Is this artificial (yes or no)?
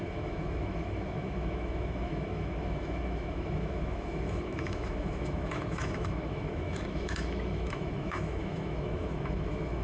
yes